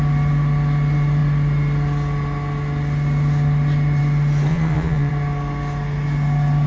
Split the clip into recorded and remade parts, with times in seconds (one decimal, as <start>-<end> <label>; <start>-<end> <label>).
0.0-4.5 recorded; 4.5-5.1 remade; 5.1-6.7 recorded